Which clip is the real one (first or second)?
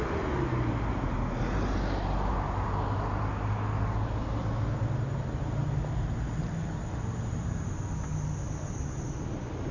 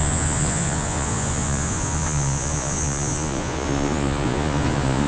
first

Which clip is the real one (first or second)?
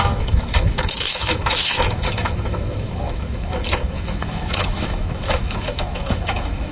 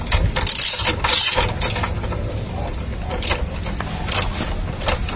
second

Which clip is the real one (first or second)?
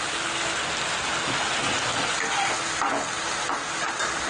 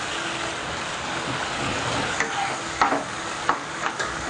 first